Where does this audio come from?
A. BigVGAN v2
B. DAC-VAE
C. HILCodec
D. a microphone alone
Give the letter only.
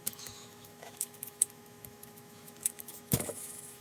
B